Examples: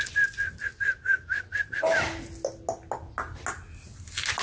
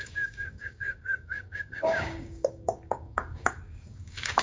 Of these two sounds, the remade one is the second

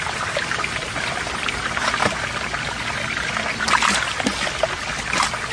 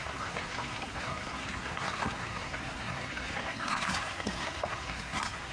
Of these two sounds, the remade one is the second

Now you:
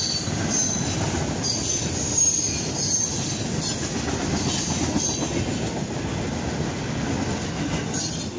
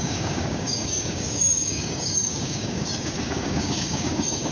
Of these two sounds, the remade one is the second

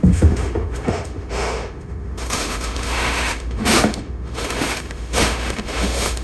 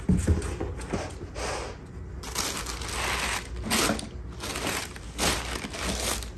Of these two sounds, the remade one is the first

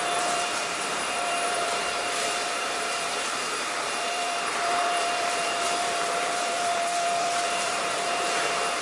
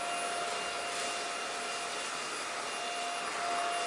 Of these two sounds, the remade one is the first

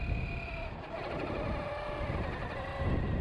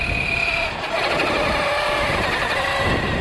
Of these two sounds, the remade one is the second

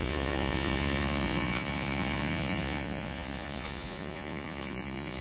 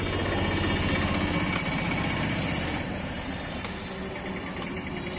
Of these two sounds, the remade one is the first